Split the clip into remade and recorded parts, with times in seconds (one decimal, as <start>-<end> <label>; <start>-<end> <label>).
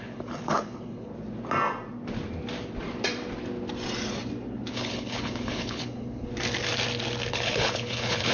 0.0-1.1 remade; 1.1-4.7 recorded; 4.7-6.3 remade; 6.3-7.3 recorded; 7.3-8.3 remade